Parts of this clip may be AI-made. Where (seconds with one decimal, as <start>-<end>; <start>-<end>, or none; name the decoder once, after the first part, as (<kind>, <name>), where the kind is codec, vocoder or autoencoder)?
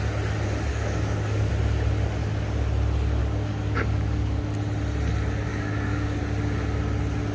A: 0.7-1.5 (codec, DAC); 3.2-4.4; 5.5-6.2